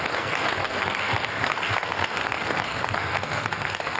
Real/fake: fake